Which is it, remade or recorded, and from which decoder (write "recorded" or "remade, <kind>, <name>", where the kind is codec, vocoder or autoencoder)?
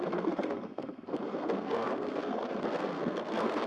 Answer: remade, codec, SNAC